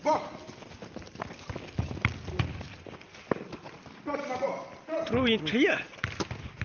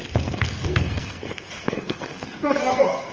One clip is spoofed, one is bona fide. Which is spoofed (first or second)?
second